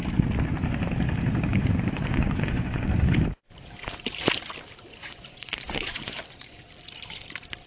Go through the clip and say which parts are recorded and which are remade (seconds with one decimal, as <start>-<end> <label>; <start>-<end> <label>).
0.0-1.5 recorded; 1.5-3.1 remade; 3.1-5.0 recorded; 5.0-6.7 remade; 6.7-7.7 recorded